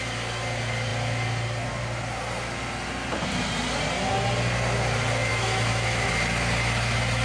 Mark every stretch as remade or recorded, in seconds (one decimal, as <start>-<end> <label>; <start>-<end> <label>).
0.0-5.3 recorded; 5.3-6.1 remade; 6.1-7.2 recorded